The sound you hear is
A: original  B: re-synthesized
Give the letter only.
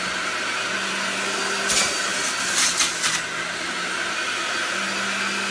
A